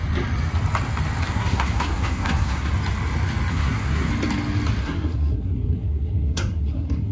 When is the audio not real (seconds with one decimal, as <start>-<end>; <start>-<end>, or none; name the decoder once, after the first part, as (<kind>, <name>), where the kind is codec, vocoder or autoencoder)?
1.3-2.7 (codec, SNAC); 3.5-4.1; 4.8-7.1